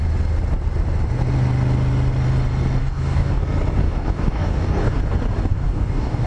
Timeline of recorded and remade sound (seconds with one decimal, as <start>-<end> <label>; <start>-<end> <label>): 0.0-2.8 recorded; 2.8-3.4 remade; 3.4-3.8 recorded; 3.8-5.0 remade; 5.0-5.5 recorded; 5.5-6.3 remade